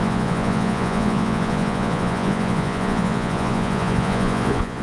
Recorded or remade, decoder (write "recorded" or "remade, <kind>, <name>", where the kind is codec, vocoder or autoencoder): remade, vocoder, Vocos